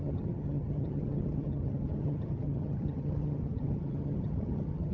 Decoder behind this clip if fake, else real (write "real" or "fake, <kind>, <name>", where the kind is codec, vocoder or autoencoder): fake, vocoder, HiFi-GAN